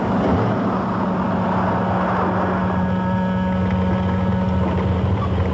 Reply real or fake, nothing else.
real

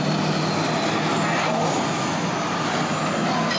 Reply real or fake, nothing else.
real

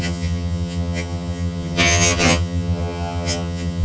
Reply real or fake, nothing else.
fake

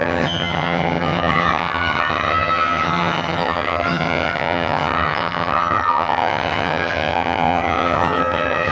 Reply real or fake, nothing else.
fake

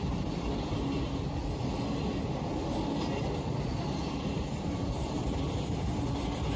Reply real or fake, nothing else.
real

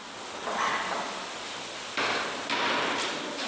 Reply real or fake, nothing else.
real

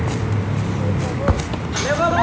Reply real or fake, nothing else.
real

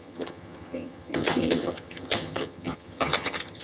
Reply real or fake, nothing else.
fake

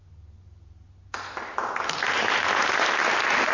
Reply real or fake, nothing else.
real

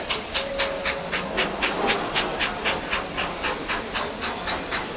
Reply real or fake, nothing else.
real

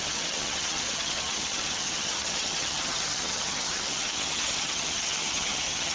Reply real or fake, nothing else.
fake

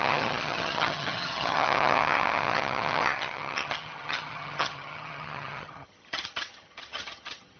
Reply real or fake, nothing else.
fake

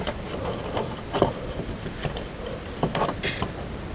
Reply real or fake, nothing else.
real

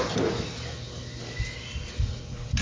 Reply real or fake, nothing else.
real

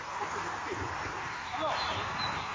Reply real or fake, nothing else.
real